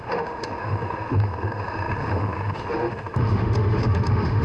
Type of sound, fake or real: fake